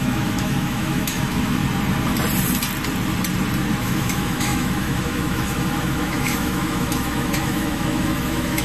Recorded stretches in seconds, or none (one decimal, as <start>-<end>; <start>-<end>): 1.6-3.8